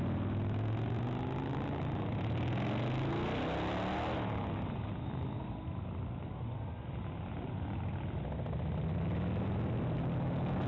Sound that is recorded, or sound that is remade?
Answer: recorded